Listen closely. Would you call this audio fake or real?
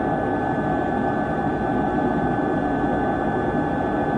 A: real